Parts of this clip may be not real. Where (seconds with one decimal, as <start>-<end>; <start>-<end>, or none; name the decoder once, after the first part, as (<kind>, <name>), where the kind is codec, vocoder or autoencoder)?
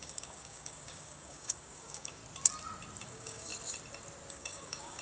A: 0.0-2.2 (codec, DAC); 3.0-3.5; 4.3-5.0